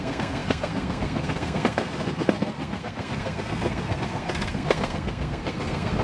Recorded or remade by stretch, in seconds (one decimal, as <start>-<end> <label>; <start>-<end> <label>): 0.0-6.0 remade